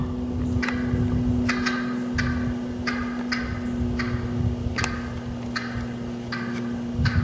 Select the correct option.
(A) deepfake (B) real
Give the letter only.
B